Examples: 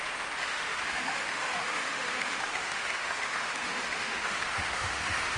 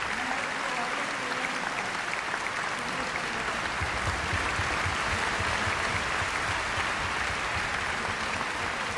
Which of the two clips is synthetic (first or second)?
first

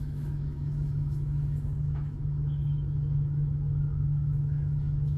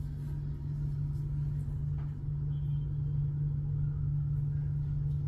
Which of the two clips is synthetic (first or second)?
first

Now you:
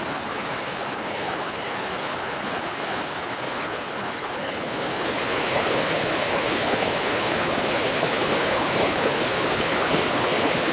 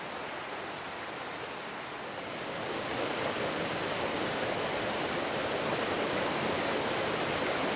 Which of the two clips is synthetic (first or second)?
first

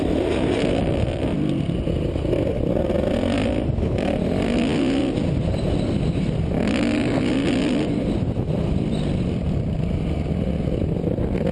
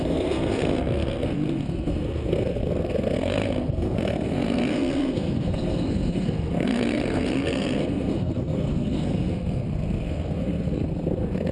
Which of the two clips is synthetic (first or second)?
second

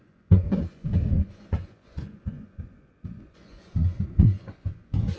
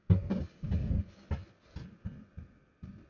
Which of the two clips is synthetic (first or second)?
first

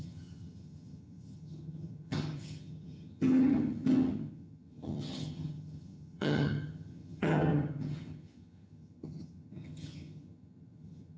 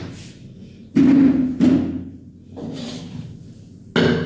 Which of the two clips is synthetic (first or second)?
first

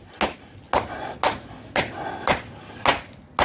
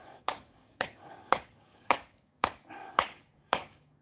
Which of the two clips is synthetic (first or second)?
second